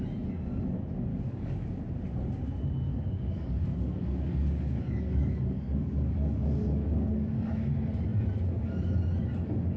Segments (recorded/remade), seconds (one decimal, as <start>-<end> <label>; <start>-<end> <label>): 0.0-1.1 recorded; 1.1-1.8 remade; 1.8-2.9 recorded; 2.9-7.7 remade; 7.7-9.8 recorded